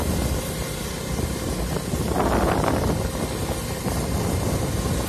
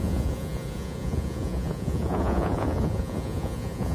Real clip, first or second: first